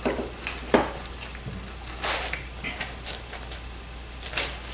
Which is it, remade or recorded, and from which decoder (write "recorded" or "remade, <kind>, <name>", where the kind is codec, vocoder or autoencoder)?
recorded